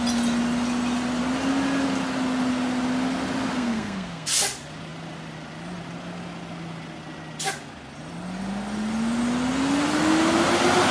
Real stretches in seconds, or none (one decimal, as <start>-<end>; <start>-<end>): 0.0-3.5; 4.3-10.9